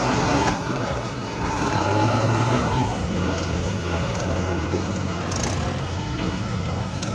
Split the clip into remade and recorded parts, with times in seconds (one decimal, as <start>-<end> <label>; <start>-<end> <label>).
0.0-5.2 remade; 5.2-5.8 recorded; 5.8-7.1 remade